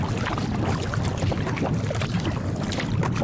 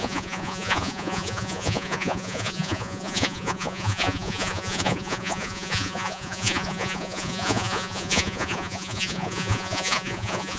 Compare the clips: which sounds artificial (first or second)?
second